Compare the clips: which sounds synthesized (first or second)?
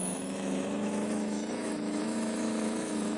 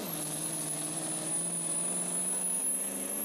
first